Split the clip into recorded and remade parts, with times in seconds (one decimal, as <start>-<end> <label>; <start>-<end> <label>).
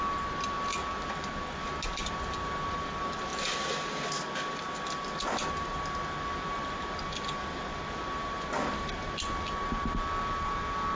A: 0.0-10.9 recorded